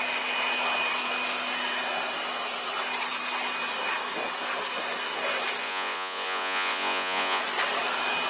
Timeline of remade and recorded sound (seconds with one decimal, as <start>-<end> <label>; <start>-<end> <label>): 0.0-5.6 recorded; 5.6-7.4 remade; 7.4-8.3 recorded